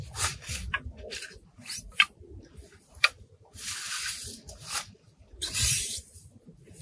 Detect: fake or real fake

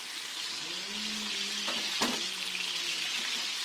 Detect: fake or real real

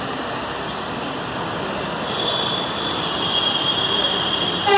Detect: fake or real fake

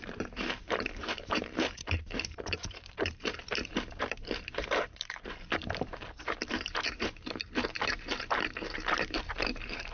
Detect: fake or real fake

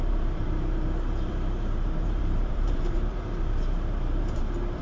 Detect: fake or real fake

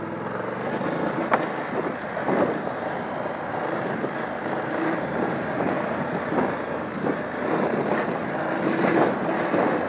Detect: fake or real real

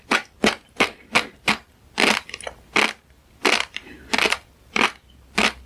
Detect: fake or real fake